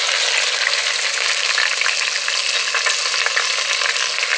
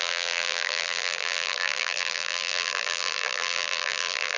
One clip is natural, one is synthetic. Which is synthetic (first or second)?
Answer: second